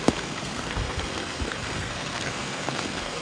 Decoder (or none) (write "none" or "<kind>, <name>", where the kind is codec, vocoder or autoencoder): codec, SNAC